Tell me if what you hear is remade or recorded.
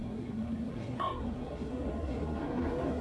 remade